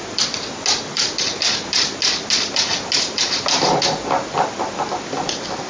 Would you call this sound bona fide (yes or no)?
yes